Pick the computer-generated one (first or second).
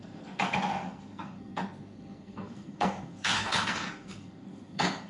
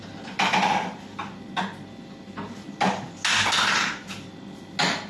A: first